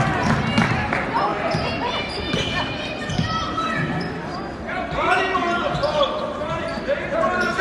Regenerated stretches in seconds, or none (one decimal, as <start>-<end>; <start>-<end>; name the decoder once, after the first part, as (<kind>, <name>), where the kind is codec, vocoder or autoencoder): 1.3-5.2 (vocoder, BigVGAN v2)